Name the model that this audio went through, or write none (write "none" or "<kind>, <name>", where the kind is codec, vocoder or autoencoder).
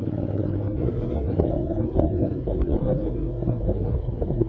codec, SNAC